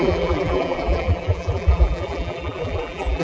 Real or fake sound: fake